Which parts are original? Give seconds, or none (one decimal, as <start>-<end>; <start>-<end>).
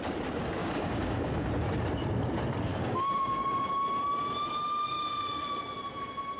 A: 0.0-0.6; 1.5-2.7; 3.6-4.8; 5.6-6.4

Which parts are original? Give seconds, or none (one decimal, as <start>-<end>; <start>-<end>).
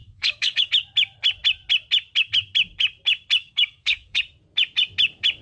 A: 0.7-3.4; 4.2-5.4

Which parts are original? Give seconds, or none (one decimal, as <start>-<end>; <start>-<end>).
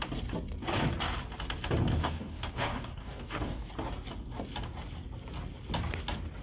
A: 0.0-2.0; 3.7-6.4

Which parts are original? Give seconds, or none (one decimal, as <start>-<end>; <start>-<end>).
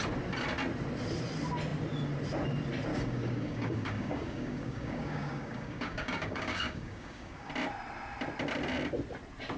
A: 0.0-2.9; 7.5-9.6